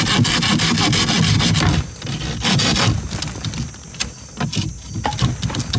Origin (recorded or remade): recorded